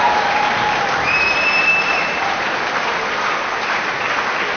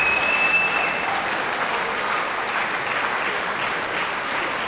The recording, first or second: second